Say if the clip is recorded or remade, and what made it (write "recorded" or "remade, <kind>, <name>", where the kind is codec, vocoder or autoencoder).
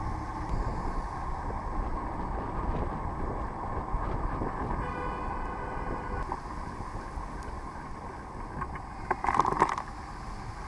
recorded